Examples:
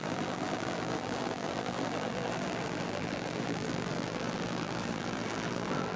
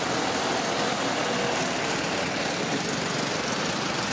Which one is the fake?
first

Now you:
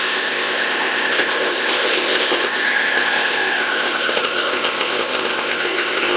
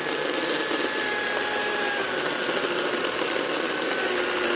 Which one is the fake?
first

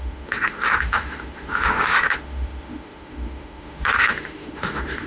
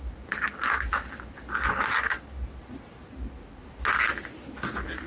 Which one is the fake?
first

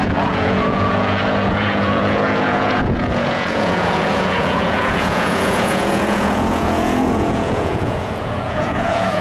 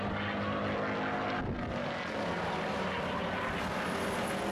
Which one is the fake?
first